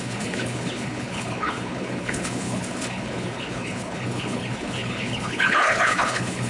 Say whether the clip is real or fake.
fake